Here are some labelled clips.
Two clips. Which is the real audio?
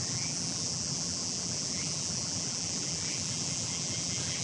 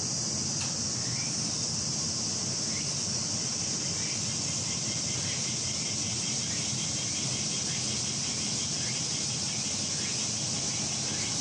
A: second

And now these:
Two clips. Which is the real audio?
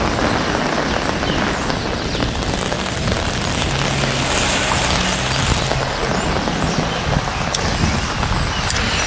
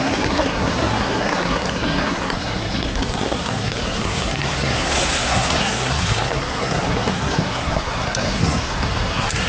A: first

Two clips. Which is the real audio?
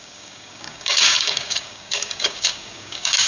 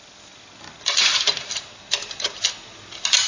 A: second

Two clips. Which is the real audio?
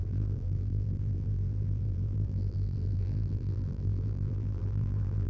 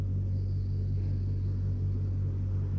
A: second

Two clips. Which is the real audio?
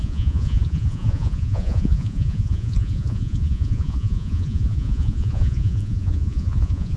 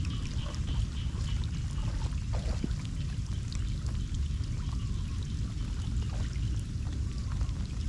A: second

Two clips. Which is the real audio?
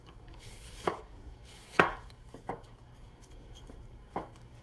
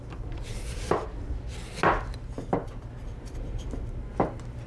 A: second